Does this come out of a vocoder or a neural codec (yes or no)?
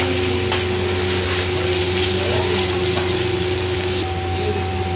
no